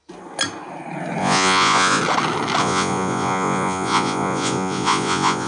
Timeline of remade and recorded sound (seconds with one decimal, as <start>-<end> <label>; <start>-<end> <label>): 0.0-1.2 recorded; 1.2-2.0 remade; 2.0-2.6 recorded; 2.6-5.5 remade